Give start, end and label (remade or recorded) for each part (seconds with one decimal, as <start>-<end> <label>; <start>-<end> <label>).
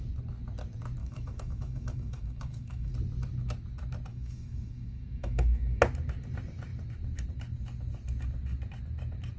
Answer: 0.0-1.0 recorded; 1.0-2.9 remade; 2.9-4.1 recorded; 4.1-5.8 remade; 5.8-9.4 recorded